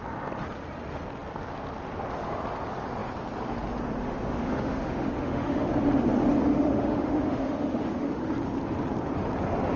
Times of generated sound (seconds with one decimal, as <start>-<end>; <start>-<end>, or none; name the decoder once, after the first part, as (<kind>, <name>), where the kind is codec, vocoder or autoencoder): 4.0-5.7 (autoencoder, DAC-VAE); 6.4-8.3